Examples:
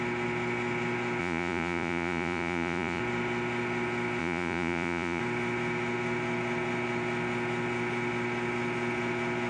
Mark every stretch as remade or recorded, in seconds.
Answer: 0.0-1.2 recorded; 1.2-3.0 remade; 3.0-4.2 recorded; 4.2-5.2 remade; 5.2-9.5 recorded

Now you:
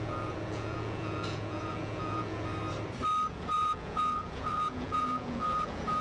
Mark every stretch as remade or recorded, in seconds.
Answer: 0.0-2.5 remade; 2.5-3.3 recorded; 3.3-6.0 remade

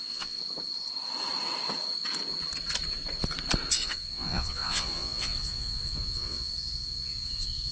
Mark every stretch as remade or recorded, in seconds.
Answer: 0.0-0.4 remade; 0.4-3.7 recorded; 3.7-7.7 remade